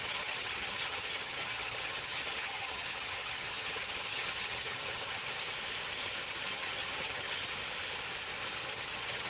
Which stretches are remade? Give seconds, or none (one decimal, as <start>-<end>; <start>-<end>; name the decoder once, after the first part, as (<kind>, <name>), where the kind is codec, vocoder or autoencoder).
0.0-5.2 (vocoder, HiFi-GAN); 6.3-7.4; 8.5-9.3